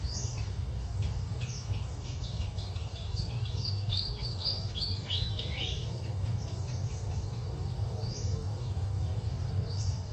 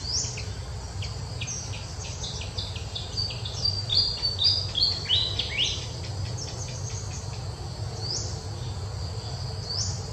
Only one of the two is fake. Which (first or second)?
first